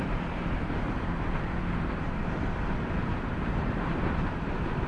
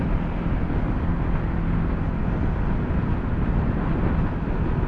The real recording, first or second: second